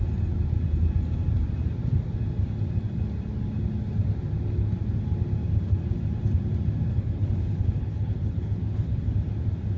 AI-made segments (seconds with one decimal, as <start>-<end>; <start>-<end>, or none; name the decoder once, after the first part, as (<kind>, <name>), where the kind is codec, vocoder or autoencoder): 6.9-9.0 (codec, HILCodec)